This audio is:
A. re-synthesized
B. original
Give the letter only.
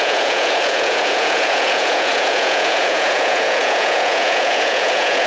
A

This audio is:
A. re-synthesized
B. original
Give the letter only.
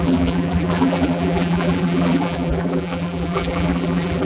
A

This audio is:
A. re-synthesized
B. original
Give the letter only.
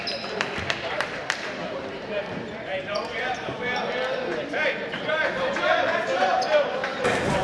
A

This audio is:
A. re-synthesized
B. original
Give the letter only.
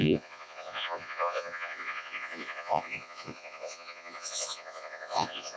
A